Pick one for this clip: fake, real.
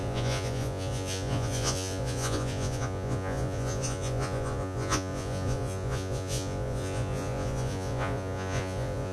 fake